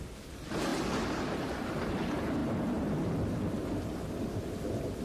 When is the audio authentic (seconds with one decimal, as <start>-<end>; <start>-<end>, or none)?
0.0-5.0